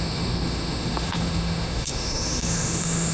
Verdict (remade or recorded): remade